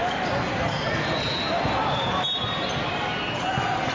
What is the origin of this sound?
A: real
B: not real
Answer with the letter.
A